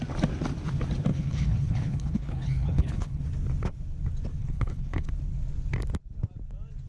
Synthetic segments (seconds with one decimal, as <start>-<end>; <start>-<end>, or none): 1.1-3.2; 4.4-5.1